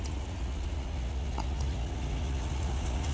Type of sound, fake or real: fake